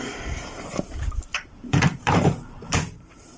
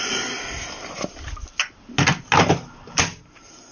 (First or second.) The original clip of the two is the second